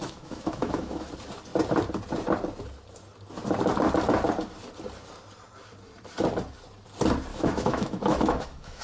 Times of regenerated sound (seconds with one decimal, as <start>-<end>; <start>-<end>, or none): 0.0-1.1; 7.3-8.8